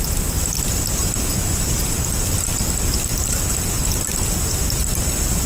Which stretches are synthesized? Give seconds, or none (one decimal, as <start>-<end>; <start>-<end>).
none